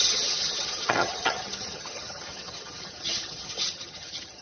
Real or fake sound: fake